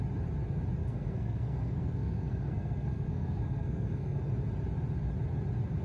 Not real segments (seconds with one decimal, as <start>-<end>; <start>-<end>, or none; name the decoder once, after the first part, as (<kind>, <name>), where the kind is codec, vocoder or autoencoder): 0.8-4.3 (codec, SNAC)